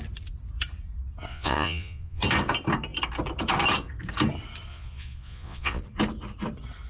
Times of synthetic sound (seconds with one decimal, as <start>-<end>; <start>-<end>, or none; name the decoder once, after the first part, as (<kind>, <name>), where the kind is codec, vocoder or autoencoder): 1.3-2.2 (vocoder, Vocos); 4.7-5.8

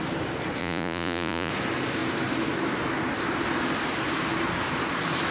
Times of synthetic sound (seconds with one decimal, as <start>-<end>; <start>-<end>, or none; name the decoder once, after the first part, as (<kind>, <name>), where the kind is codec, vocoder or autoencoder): 0.6-1.5 (vocoder, Vocos)

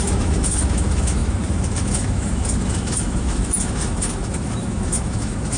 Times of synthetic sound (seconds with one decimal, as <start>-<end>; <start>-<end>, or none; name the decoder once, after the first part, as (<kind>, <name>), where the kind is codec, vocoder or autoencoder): 0.0-5.6 (autoencoder, DAC-VAE)

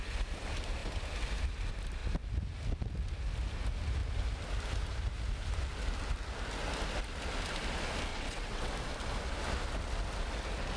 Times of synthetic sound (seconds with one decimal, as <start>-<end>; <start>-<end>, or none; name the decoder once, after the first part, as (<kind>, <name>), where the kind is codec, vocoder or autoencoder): 8.1-8.7 (vocoder, WaveNeXt)

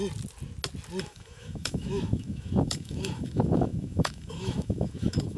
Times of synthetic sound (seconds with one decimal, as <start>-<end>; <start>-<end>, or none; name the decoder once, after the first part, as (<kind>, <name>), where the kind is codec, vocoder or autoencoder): 1.0-5.4 (autoencoder, DAC-VAE)

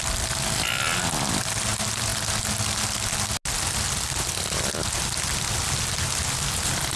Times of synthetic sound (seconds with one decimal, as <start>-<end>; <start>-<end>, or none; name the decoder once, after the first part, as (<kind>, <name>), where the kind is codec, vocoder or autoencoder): none